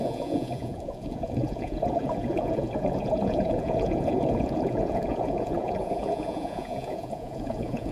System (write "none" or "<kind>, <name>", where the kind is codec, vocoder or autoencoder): vocoder, Vocos